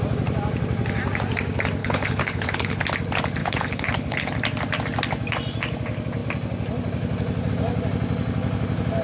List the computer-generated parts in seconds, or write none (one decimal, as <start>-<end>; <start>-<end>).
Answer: 1.8-2.8; 3.4-4.3